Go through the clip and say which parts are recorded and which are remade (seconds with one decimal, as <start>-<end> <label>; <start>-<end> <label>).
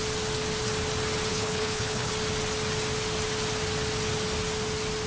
0.0-1.3 recorded; 1.3-2.1 remade; 2.1-5.1 recorded